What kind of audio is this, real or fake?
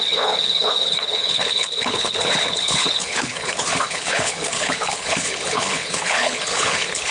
fake